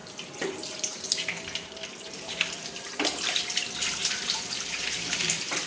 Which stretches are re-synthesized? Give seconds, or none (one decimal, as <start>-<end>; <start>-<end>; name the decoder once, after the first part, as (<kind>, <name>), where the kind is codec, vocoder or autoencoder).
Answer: 0.0-3.4 (vocoder, BigVGAN v2); 4.0-5.7